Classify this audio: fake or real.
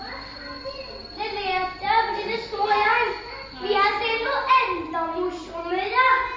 real